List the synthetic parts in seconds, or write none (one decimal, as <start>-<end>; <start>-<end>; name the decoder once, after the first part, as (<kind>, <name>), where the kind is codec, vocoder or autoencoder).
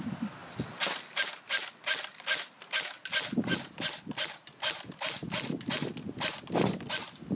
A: none